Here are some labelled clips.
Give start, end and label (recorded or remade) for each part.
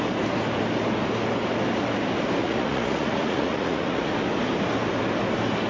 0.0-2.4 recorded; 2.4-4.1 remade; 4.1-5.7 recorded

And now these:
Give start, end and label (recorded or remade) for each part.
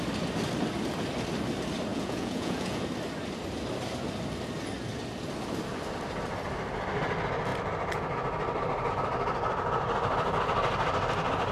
0.0-1.9 recorded; 1.9-2.8 remade; 2.8-11.5 recorded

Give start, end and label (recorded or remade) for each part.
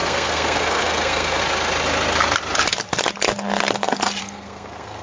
0.0-1.4 remade; 1.4-4.2 recorded; 4.2-5.0 remade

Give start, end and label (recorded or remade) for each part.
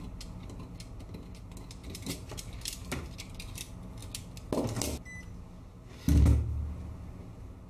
0.0-1.8 recorded; 1.8-3.3 remade; 3.3-7.7 recorded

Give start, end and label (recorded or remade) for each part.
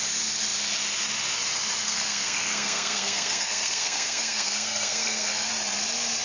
0.0-1.8 recorded; 1.8-5.5 remade; 5.5-6.2 recorded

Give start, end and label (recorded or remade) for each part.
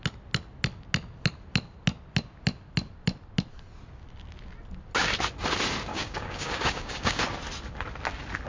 0.0-5.9 recorded; 5.9-7.2 remade; 7.2-8.5 recorded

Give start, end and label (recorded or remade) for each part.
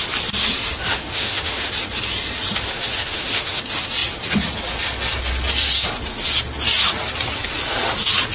0.0-0.9 recorded; 0.9-1.7 remade; 1.7-2.6 recorded; 2.6-3.6 remade; 3.6-8.3 recorded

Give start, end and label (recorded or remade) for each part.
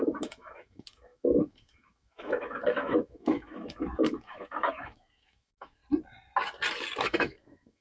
0.0-5.8 remade; 5.8-7.0 recorded; 7.0-7.8 remade